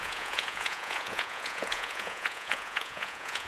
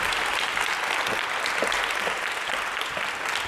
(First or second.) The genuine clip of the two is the second